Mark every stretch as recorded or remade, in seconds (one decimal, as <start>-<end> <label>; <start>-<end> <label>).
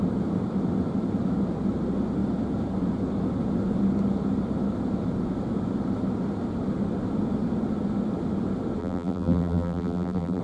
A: 0.0-8.8 recorded; 8.8-10.4 remade